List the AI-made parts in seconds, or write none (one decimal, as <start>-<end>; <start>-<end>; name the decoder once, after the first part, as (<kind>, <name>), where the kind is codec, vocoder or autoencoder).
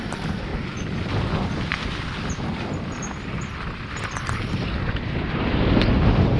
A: 0.0-0.5 (vocoder, BigVGAN v2); 4.2-6.4